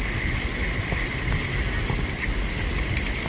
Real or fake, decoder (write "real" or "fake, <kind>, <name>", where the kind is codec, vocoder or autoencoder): real